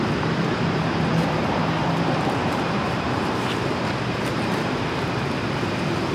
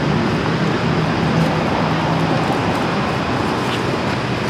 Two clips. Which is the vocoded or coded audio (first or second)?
first